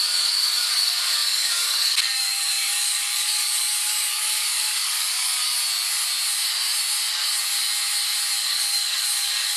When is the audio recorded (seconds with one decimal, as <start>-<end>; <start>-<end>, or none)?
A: 5.6-8.4